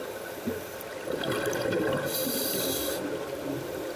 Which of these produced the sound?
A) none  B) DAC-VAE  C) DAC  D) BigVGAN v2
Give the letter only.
A